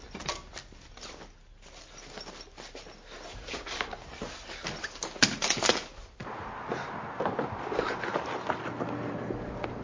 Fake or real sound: real